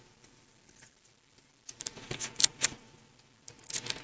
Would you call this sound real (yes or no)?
yes